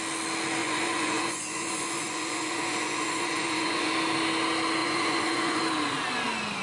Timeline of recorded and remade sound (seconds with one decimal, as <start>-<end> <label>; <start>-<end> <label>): 0.0-0.6 recorded; 0.6-3.9 remade; 3.9-4.8 recorded; 4.8-5.6 remade; 5.6-6.6 recorded